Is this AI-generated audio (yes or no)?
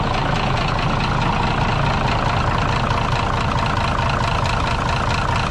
no